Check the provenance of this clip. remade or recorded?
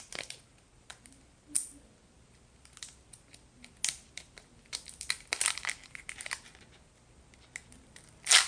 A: recorded